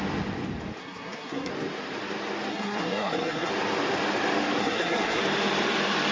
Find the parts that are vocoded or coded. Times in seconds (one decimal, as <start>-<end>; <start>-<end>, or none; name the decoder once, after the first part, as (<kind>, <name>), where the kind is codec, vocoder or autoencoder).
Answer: 0.8-1.5 (codec, SNAC); 2.5-3.5; 4.6-5.2